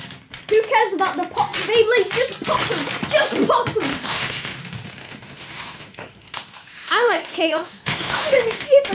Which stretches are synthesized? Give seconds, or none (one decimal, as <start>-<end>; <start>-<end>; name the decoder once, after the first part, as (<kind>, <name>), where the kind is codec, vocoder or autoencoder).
3.9-8.9 (autoencoder, DAC-VAE)